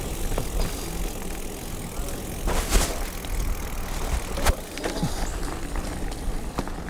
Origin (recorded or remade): recorded